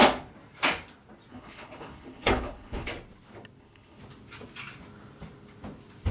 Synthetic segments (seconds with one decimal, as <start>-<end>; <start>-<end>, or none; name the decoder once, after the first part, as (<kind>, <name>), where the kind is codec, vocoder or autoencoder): 1.3-2.9 (codec, HILCodec); 3.6-4.0